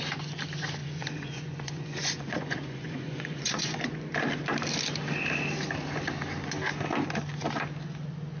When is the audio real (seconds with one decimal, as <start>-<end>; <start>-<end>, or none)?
0.0-0.8; 4.1-8.4